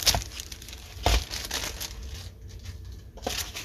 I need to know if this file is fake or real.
real